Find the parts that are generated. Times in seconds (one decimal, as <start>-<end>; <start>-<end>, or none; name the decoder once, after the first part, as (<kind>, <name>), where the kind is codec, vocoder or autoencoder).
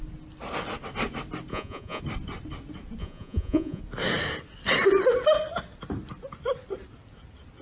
1.5-2.0 (vocoder, Vocos); 3.0-3.8